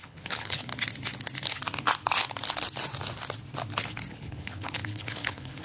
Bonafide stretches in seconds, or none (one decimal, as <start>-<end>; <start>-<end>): 0.7-4.1